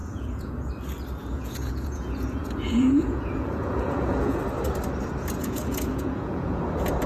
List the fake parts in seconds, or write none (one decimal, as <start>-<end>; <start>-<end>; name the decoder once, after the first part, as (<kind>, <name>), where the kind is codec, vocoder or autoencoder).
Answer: 0.0-0.7 (vocoder, Vocos); 1.2-4.4; 5.4-6.6